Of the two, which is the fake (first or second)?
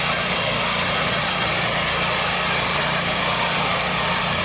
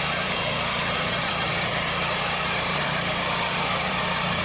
second